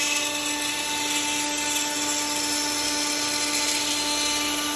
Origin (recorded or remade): recorded